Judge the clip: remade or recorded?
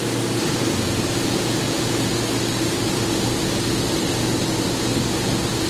recorded